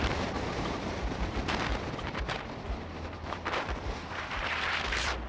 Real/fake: fake